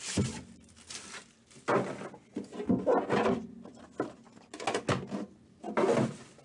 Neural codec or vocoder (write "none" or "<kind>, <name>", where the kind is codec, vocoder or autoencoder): none